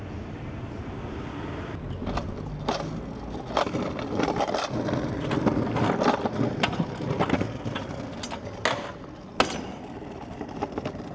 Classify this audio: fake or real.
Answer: real